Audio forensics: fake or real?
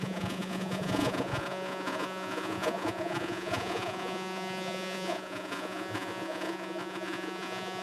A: fake